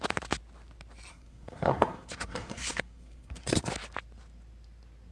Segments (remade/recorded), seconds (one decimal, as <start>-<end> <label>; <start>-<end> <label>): 0.0-1.1 recorded; 1.1-3.7 remade; 3.7-5.1 recorded